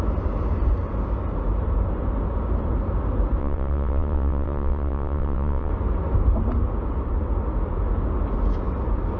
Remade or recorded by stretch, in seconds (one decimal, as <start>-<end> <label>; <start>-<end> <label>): 0.0-3.4 recorded; 3.4-5.7 remade; 5.7-9.2 recorded